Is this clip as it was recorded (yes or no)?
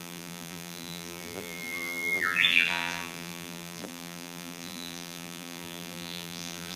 no